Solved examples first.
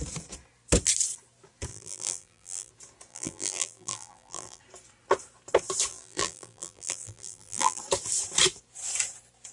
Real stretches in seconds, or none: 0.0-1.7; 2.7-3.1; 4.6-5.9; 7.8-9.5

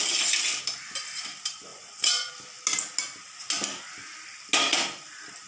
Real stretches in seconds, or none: 0.0-1.7; 2.3-5.5

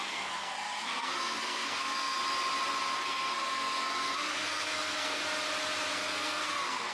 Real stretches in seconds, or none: 2.2-2.9; 5.2-5.9

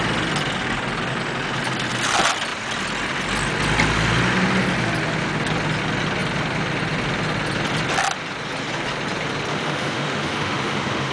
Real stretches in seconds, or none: 0.0-9.5

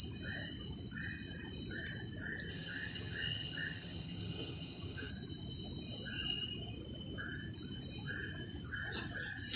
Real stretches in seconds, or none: 0.0-2.5; 5.1-9.6

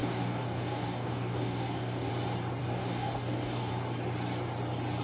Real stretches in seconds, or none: 2.1-2.6; 3.7-5.0